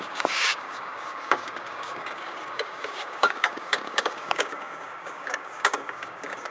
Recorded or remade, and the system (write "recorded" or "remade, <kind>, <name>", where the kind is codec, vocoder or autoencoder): remade, codec, DAC